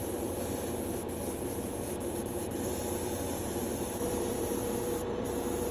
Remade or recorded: remade